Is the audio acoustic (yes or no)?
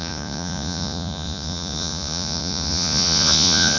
no